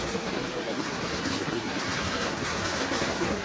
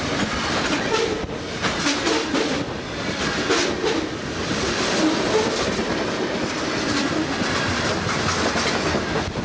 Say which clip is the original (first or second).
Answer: second